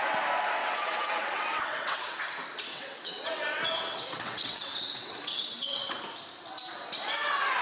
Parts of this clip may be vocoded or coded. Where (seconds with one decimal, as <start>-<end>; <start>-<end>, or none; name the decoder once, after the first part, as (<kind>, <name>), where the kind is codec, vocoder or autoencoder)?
0.6-2.2 (vocoder, WaveNeXt); 2.7-5.9